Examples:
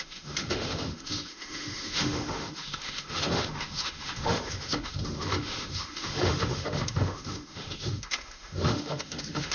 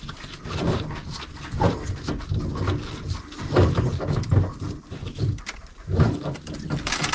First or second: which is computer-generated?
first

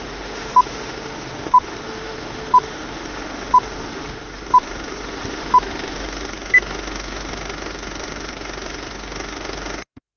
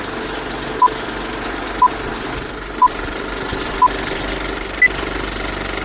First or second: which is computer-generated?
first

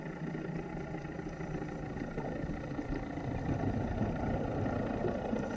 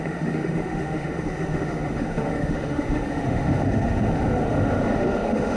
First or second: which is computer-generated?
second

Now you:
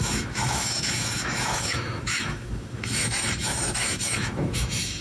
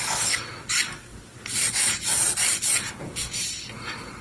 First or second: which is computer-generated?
first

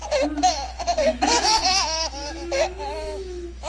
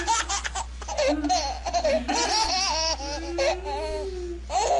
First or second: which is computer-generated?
first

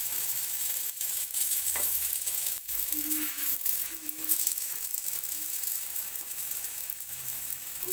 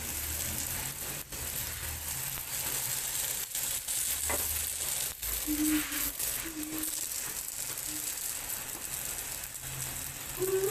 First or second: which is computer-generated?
first